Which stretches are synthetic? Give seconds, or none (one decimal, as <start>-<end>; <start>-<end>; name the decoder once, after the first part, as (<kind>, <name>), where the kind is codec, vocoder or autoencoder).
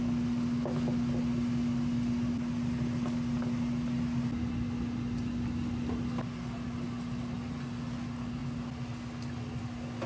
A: none